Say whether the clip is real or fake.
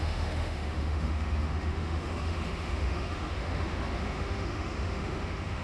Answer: fake